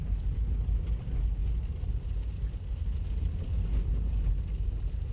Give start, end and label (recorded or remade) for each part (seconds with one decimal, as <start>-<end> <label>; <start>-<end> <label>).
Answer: 0.0-5.1 recorded